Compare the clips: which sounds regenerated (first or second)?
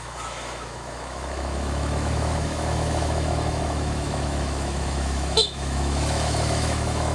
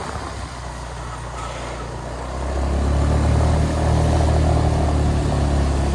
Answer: first